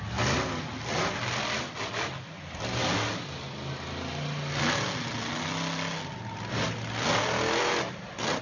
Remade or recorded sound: recorded